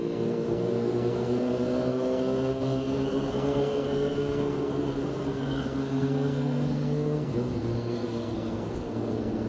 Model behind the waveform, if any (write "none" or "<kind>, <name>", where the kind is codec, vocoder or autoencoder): codec, SNAC